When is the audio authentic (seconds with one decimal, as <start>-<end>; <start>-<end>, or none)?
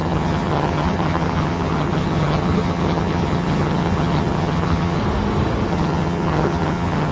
5.0-5.7